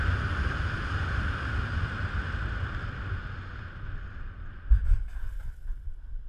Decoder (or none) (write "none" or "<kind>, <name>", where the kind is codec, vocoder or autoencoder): none